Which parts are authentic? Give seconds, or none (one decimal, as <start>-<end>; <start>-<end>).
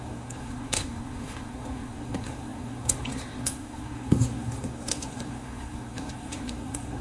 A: none